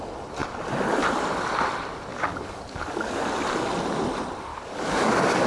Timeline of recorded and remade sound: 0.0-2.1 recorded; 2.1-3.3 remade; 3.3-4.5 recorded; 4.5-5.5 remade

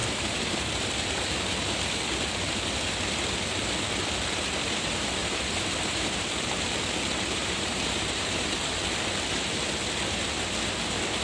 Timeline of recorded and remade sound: 0.0-0.9 remade; 0.9-5.2 recorded; 5.2-6.3 remade; 6.3-7.4 recorded; 7.4-8.7 remade; 8.7-11.2 recorded